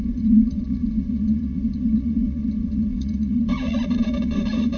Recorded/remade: remade